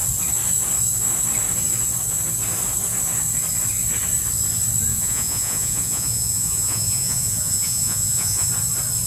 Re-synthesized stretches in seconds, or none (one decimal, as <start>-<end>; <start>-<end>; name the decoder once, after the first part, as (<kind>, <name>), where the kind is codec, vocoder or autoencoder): 4.9-8.5 (vocoder, Vocos)